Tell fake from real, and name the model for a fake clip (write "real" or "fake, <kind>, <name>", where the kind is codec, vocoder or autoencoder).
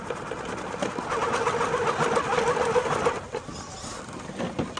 real